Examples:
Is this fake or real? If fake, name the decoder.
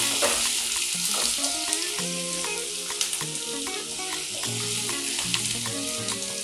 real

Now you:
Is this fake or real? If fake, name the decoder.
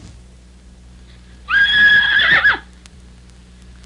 fake, vocoder, BigVGAN v2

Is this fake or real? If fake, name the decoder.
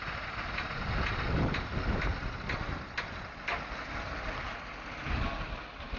real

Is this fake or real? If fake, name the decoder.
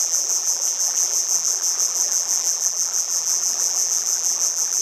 fake, vocoder, BigVGAN v2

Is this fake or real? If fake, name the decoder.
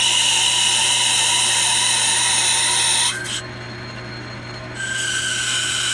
real